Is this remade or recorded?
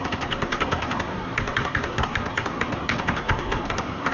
remade